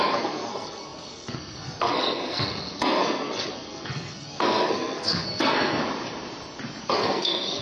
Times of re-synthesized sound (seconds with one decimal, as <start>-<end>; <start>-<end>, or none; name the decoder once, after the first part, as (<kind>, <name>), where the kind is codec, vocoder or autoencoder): 0.0-5.8 (codec, SNAC); 6.8-7.6